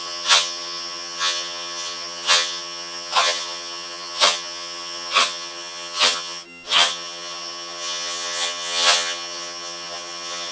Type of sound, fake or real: fake